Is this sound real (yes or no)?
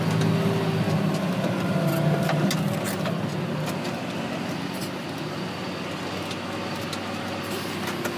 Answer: yes